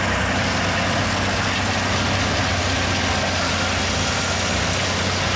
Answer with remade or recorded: recorded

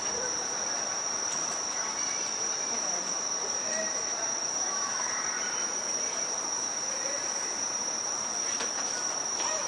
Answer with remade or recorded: remade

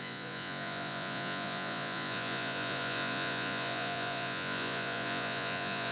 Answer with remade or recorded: remade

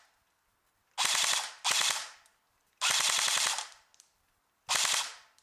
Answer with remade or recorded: recorded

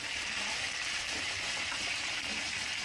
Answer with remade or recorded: remade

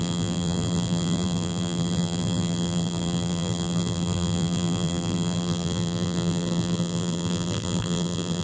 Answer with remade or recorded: remade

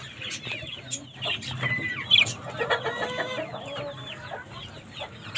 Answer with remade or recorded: recorded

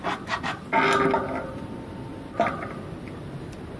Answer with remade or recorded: recorded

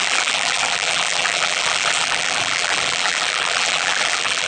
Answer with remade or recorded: remade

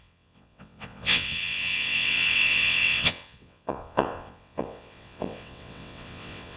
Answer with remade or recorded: remade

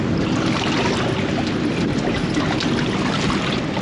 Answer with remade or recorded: recorded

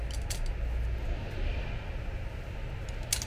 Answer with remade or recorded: recorded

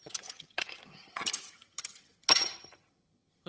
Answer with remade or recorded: remade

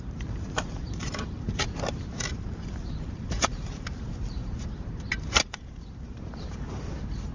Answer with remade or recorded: remade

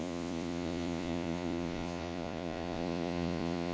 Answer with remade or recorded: remade